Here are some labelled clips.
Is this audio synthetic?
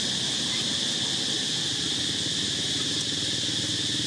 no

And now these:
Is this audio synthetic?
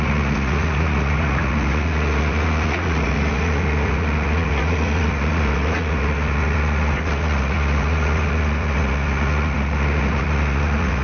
yes